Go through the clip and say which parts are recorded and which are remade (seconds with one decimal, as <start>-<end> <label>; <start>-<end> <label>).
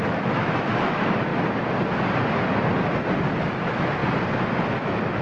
0.0-1.3 remade; 1.3-3.4 recorded; 3.4-4.0 remade; 4.0-4.8 recorded; 4.8-5.2 remade